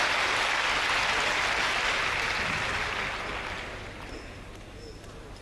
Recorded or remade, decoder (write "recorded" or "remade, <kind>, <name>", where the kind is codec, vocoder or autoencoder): recorded